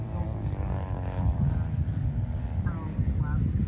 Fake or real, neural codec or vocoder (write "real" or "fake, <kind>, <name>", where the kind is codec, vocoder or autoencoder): real